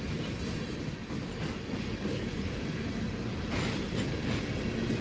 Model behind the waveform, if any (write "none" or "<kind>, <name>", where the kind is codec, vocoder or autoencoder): none